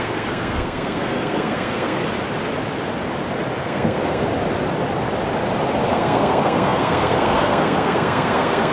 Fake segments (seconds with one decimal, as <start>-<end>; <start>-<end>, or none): 0.0-2.0; 3.6-4.2; 5.9-8.7